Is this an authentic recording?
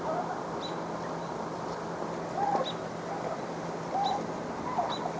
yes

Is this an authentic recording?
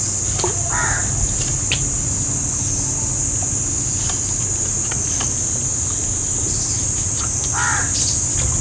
yes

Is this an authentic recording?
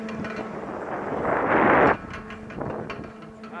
yes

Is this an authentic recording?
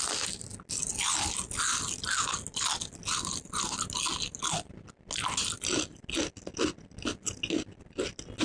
yes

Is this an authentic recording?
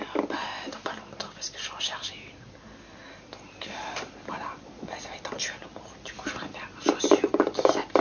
yes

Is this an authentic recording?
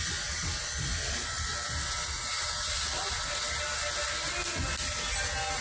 yes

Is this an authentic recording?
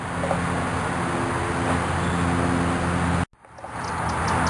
yes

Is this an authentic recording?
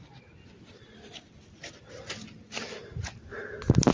yes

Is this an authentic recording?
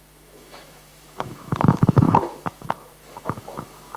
no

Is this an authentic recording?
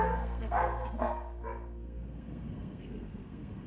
no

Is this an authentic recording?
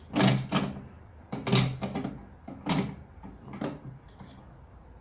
yes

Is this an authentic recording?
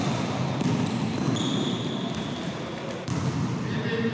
yes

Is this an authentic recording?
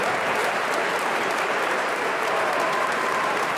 no